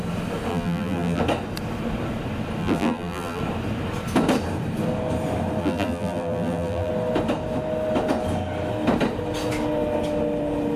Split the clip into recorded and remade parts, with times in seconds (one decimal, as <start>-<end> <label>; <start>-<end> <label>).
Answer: 0.0-0.5 recorded; 0.5-1.2 remade; 1.2-2.6 recorded; 2.6-3.4 remade; 3.4-5.6 recorded; 5.6-6.9 remade; 6.9-10.8 recorded